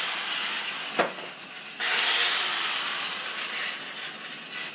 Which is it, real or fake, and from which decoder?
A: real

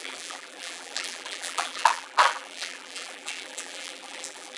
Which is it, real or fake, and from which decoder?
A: fake, vocoder, BigVGAN v2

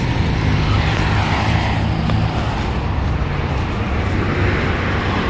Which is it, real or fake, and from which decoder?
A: real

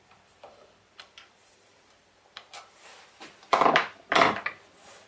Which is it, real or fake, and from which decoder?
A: fake, vocoder, BigVGAN v2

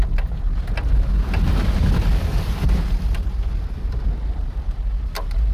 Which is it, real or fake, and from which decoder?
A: real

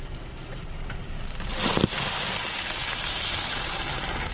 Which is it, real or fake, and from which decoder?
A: fake, vocoder, BigVGAN v2